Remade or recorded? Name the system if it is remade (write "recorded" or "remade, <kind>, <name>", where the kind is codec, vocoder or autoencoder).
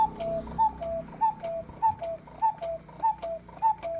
recorded